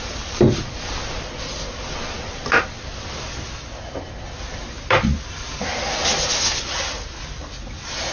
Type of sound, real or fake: real